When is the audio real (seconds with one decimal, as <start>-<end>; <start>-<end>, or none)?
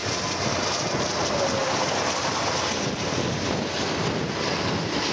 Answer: 0.0-5.1